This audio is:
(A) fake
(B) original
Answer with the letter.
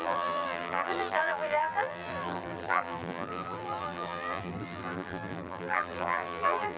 A